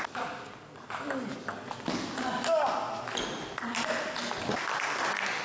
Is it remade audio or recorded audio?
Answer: recorded